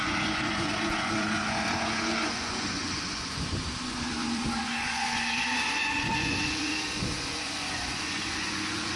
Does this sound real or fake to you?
fake